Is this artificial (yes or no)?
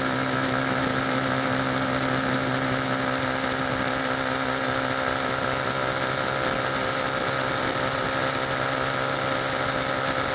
no